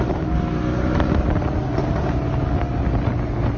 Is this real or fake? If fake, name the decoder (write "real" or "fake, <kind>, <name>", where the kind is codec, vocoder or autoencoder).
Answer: real